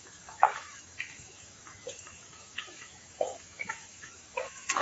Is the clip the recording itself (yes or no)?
no